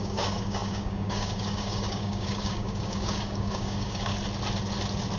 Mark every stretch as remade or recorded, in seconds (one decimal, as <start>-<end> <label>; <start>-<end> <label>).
0.0-4.1 remade; 4.1-5.2 recorded